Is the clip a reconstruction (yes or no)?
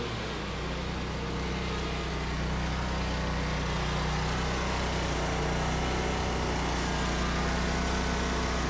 no